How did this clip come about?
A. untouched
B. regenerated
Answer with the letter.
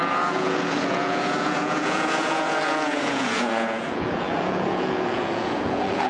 B